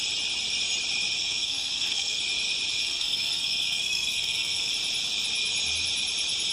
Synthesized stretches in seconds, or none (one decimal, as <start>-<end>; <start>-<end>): 1.2-2.2; 2.8-4.7